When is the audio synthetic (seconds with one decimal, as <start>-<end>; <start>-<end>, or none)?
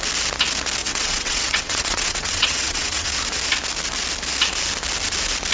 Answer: 0.8-3.1